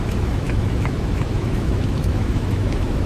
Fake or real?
fake